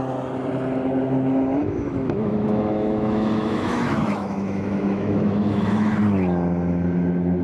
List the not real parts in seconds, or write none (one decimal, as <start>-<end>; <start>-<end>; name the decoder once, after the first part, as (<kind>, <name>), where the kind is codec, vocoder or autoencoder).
1.6-6.0 (autoencoder, DAC-VAE)